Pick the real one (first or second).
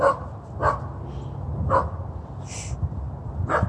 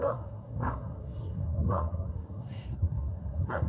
first